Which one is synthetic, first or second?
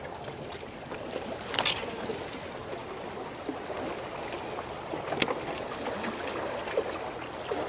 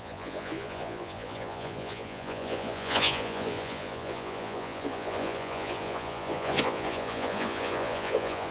second